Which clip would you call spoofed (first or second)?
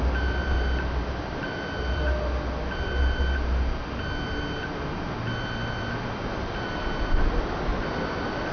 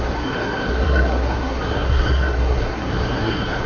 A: second